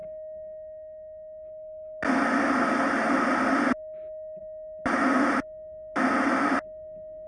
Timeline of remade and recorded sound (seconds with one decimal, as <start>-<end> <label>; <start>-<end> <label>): 0.0-7.3 recorded